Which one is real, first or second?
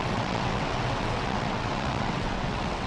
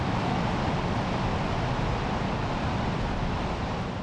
second